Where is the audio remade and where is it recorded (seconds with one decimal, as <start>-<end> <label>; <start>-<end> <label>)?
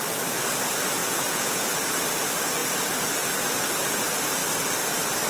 0.0-1.0 recorded; 1.0-1.7 remade; 1.7-5.3 recorded